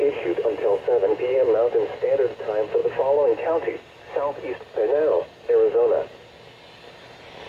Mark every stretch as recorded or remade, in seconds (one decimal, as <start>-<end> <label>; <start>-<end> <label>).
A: 0.0-7.5 recorded